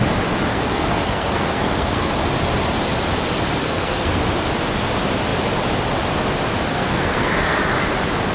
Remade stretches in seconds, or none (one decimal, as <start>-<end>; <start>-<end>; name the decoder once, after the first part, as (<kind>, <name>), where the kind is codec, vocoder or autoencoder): 0.5-2.1 (codec, SNAC); 3.6-4.2; 6.7-7.6